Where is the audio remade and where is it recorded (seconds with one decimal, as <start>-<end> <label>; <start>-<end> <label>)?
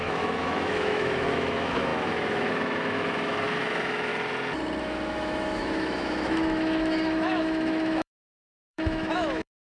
0.0-4.1 remade; 4.1-4.8 recorded; 4.8-9.6 remade